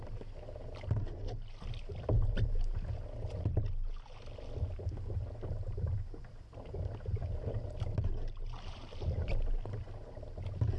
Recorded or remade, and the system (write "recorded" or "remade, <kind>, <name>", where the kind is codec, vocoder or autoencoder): recorded